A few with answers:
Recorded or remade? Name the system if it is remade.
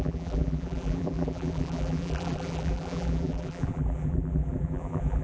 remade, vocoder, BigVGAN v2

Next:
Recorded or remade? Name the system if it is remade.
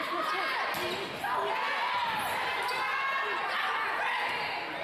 recorded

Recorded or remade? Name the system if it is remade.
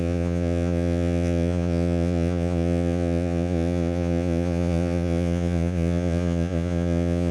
remade, vocoder, Vocos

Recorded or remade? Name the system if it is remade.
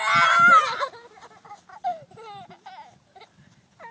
recorded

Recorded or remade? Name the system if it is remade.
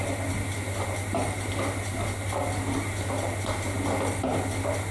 recorded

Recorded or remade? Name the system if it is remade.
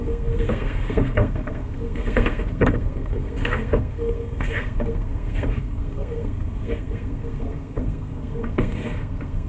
remade, codec, SNAC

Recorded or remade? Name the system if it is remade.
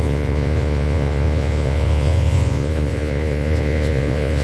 remade, vocoder, Vocos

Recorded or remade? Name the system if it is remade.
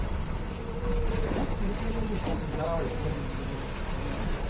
remade, vocoder, BigVGAN v2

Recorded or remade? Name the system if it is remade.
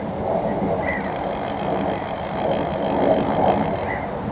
recorded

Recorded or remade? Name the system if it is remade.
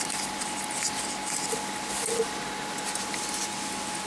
recorded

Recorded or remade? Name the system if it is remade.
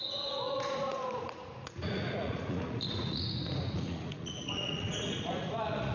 remade, vocoder, Vocos